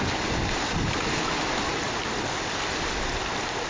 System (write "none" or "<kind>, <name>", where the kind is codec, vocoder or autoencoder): none